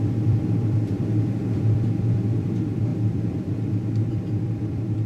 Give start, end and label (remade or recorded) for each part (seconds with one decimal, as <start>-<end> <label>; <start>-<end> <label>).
0.0-5.1 remade

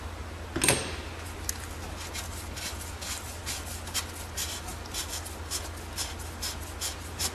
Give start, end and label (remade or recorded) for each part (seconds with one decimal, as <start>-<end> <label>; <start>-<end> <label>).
0.0-7.3 recorded